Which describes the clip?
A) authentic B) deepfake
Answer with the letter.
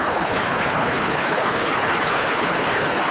B